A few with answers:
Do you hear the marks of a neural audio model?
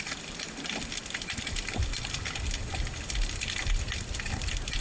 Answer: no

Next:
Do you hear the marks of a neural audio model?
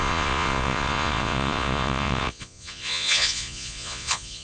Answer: yes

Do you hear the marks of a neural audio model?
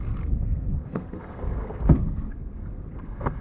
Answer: yes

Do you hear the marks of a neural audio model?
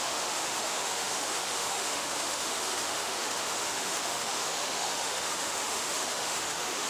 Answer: yes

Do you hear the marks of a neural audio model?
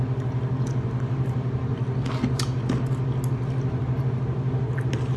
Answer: no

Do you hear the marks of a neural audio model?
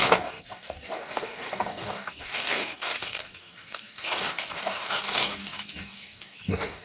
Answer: yes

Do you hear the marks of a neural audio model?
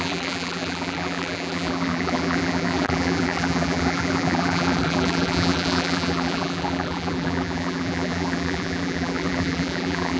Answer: yes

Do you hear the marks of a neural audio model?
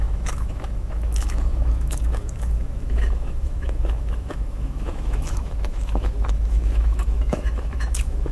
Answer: yes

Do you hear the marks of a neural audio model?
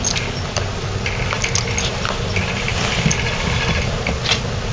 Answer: no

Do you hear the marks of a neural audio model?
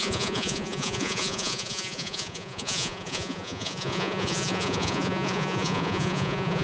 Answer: yes